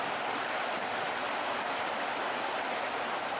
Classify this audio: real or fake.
real